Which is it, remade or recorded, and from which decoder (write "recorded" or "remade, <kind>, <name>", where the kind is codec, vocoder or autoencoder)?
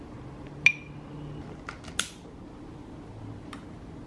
recorded